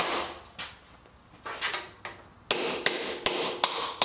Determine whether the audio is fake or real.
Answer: real